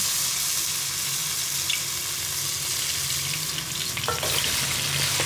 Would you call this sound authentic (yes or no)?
yes